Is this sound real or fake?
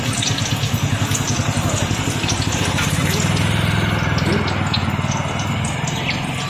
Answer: real